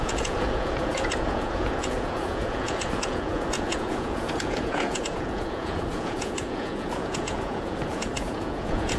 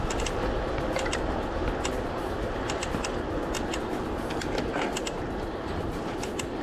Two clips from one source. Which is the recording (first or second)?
second